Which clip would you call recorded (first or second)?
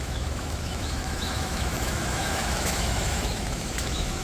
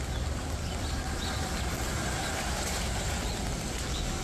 second